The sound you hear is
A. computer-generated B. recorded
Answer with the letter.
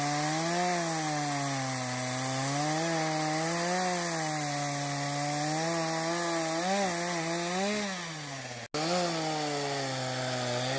B